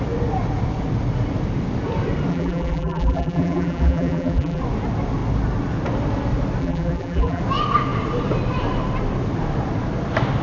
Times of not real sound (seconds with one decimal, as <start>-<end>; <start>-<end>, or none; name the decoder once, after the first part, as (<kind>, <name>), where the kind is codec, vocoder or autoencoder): 2.3-4.6 (vocoder, BigVGAN v2); 6.6-7.4